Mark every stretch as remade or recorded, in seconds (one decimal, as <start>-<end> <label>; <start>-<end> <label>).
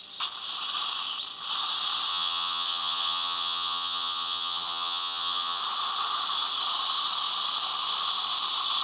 0.0-2.1 recorded; 2.1-5.6 remade; 5.6-8.8 recorded